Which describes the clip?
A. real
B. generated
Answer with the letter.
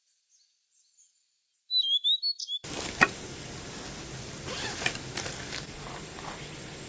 A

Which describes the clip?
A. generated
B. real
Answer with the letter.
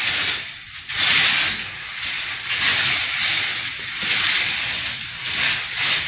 B